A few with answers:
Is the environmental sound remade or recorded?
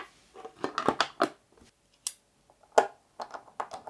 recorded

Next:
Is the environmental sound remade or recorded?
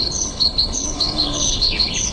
remade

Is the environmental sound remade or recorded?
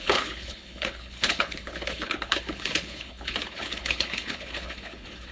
remade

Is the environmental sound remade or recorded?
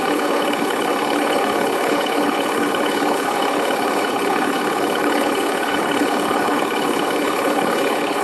remade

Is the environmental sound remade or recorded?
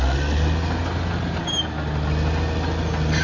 recorded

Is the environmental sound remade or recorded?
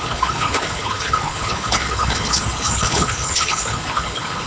remade